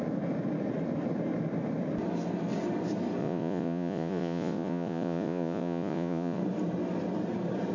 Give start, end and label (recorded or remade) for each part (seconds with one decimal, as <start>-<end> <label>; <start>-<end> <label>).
0.0-3.2 recorded; 3.2-6.4 remade; 6.4-7.7 recorded